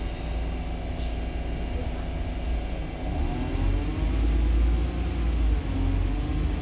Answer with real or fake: real